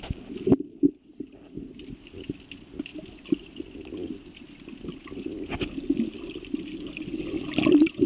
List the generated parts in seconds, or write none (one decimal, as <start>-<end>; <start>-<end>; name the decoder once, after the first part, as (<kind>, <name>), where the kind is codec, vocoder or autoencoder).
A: none